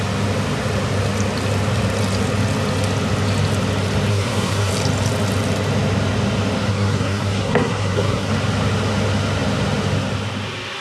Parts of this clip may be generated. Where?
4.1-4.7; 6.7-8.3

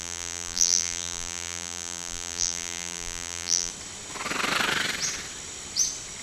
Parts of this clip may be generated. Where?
0.0-3.7